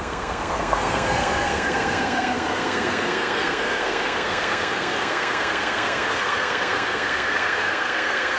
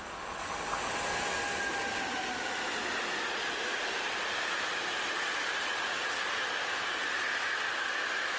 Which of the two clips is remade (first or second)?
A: first